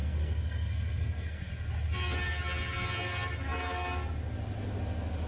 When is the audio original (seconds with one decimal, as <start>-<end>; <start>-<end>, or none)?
1.5-5.3